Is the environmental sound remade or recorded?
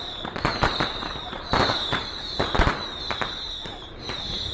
remade